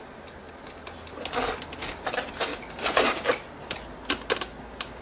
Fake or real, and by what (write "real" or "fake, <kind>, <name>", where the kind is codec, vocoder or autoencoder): real